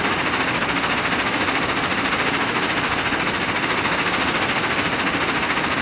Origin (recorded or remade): recorded